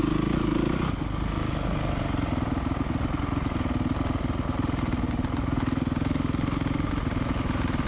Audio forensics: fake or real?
real